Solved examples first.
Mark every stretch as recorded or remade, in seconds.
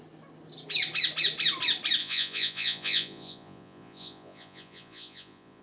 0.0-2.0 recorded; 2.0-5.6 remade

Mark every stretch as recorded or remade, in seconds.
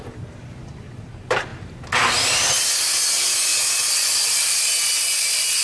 0.0-5.6 recorded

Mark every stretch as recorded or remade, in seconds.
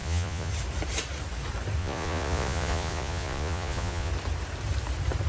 0.0-0.5 remade; 0.5-1.8 recorded; 1.8-4.1 remade; 4.1-5.3 recorded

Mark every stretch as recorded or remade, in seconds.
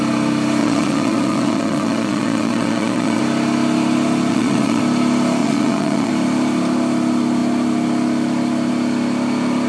0.0-0.6 recorded; 0.6-3.2 remade; 3.2-4.3 recorded; 4.3-4.8 remade; 4.8-5.4 recorded; 5.4-6.1 remade; 6.1-9.7 recorded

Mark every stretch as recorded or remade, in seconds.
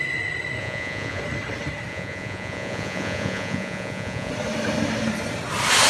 0.0-0.6 recorded; 0.6-1.2 remade; 1.2-1.9 recorded; 1.9-4.3 remade; 4.3-5.9 recorded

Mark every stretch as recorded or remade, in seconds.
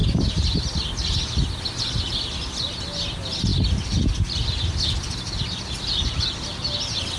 0.0-7.2 recorded